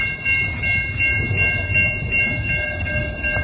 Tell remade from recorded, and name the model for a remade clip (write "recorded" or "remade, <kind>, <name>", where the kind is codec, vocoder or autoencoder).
recorded